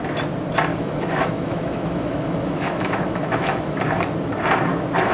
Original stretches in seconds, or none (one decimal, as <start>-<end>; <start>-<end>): 0.0-0.7; 3.8-5.1